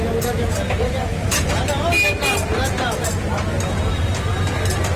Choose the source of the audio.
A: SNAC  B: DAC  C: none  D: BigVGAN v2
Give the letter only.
C